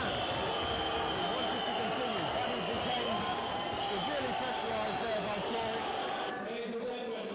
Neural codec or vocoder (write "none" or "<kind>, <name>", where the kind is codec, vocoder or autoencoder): none